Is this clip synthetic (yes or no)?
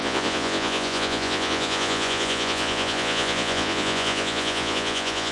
yes